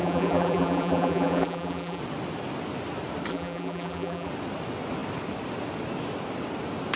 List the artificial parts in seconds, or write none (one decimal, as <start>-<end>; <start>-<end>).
0.0-2.0; 3.3-4.3